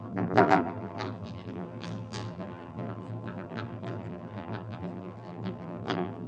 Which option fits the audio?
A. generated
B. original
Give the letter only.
A